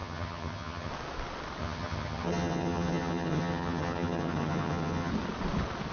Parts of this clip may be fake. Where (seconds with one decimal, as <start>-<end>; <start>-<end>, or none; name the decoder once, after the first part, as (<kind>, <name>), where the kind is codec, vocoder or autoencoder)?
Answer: 0.0-0.9 (vocoder, HiFi-GAN); 1.6-5.1